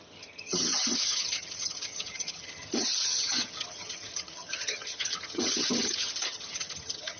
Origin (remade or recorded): remade